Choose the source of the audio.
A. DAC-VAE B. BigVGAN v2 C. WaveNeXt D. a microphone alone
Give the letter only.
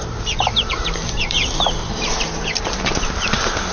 B